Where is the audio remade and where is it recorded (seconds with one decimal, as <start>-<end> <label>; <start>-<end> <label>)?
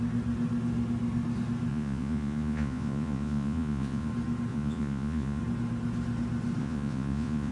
0.0-1.7 recorded; 1.7-4.1 remade; 4.1-4.5 recorded; 4.5-5.4 remade; 5.4-6.6 recorded; 6.6-7.5 remade